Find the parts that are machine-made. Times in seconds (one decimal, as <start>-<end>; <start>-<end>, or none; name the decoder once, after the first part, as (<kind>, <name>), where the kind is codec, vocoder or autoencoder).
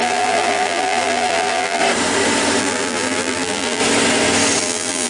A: 0.0-1.8 (vocoder, BigVGAN v2); 2.6-3.8; 4.6-5.1